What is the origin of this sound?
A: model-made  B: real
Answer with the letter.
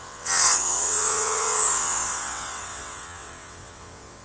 A